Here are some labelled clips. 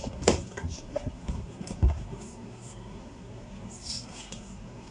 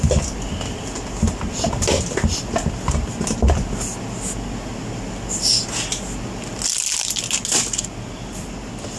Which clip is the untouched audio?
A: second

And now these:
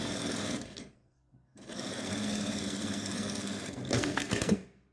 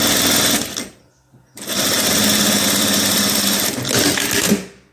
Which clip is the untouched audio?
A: second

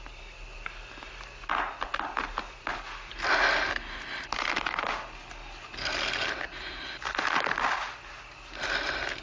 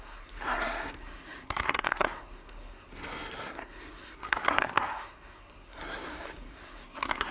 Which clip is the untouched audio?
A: first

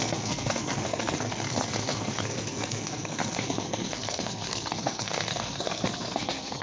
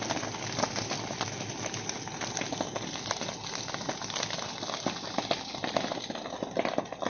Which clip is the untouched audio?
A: second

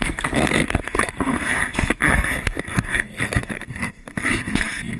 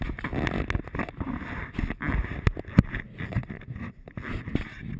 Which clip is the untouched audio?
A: second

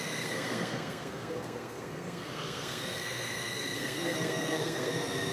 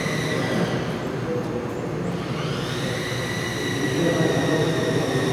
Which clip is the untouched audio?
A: second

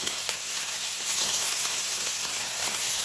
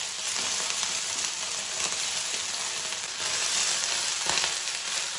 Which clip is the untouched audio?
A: second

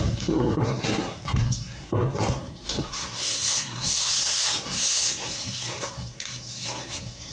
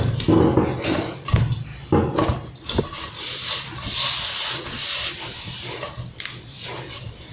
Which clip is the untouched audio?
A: second